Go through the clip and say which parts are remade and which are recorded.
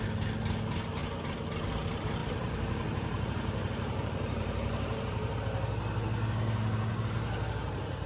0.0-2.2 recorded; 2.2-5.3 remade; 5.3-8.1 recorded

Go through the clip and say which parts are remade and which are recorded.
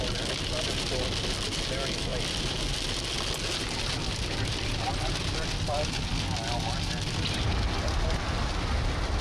0.0-2.1 recorded; 2.1-2.7 remade; 2.7-9.2 recorded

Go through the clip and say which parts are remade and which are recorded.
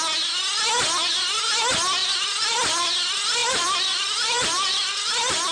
0.0-2.0 recorded; 2.0-2.9 remade; 2.9-3.4 recorded; 3.4-5.5 remade